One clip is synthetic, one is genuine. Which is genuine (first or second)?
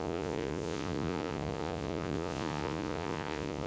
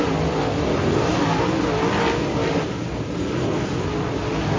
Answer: second